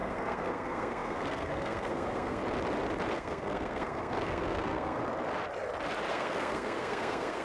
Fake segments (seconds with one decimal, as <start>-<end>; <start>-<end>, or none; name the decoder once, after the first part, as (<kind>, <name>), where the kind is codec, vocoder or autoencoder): 0.0-2.4 (codec, SNAC); 3.1-5.0; 6.1-7.4